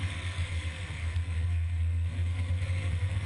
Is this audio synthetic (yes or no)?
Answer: yes